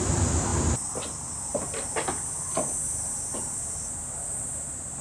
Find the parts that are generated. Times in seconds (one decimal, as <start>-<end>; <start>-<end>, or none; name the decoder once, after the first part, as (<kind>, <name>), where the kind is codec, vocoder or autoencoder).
none